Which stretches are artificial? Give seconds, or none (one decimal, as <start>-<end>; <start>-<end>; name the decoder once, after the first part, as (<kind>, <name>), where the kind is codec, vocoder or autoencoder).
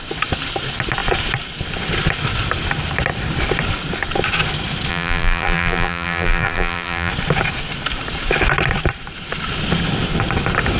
4.9-7.1 (vocoder, BigVGAN v2)